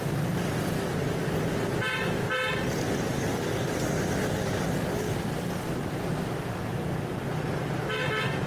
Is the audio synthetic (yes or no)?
no